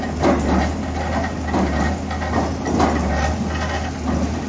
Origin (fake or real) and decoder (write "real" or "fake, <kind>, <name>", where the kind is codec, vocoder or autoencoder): real